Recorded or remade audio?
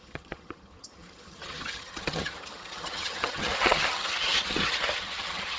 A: remade